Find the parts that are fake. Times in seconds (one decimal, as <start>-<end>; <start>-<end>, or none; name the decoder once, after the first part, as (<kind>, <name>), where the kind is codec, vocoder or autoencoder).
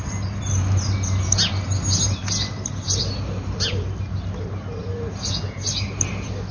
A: none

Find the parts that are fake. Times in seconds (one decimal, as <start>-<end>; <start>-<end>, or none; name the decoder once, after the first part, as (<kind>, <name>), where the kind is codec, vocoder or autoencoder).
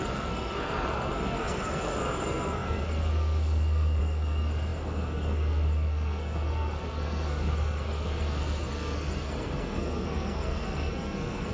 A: 0.0-11.5 (codec, SNAC)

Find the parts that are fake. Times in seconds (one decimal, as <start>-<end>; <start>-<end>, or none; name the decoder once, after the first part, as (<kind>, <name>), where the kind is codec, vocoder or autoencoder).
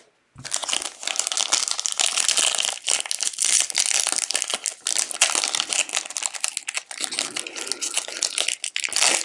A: none